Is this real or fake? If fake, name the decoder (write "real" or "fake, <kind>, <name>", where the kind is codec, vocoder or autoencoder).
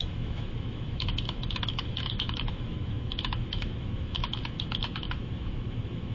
fake, autoencoder, DAC-VAE